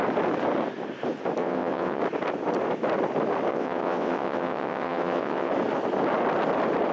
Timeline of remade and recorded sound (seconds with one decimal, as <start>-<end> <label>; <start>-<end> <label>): 0.0-1.4 recorded; 1.4-2.0 remade; 2.0-3.5 recorded; 3.5-5.5 remade; 5.5-6.9 recorded